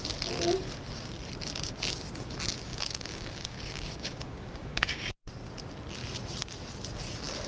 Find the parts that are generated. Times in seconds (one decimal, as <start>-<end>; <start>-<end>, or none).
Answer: 2.7-5.1